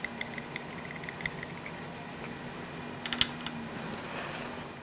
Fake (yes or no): no